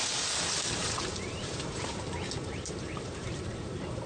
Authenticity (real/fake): fake